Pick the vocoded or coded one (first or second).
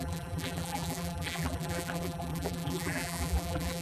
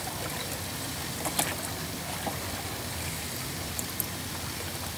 first